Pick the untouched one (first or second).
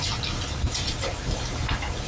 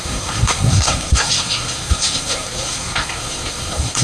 first